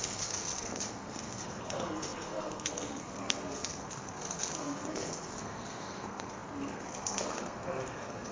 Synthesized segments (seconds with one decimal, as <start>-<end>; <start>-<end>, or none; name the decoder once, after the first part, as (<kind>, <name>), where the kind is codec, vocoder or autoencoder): 0.0-8.3 (codec, SNAC)